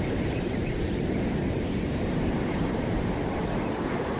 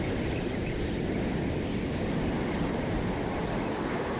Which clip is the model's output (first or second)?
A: first